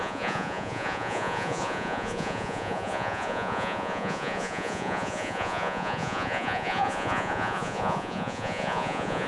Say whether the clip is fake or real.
fake